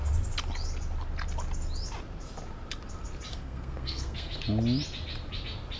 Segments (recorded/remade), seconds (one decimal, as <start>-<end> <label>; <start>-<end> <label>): 0.0-3.3 recorded; 3.3-4.4 remade; 4.4-5.8 recorded